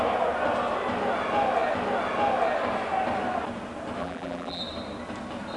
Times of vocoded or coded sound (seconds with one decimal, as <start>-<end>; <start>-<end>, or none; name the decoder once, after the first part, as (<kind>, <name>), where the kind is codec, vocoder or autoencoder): 4.0-4.6 (vocoder, BigVGAN v2)